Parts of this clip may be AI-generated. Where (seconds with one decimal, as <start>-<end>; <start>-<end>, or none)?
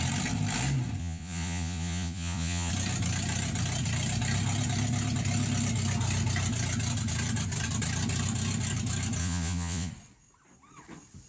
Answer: 1.0-2.7; 9.2-9.9